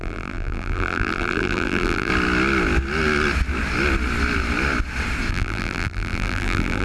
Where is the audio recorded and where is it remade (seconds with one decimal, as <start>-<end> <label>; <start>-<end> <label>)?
0.0-2.1 remade; 2.1-5.3 recorded; 5.3-6.8 remade